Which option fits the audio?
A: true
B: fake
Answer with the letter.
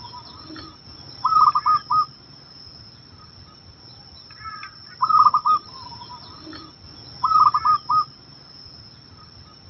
A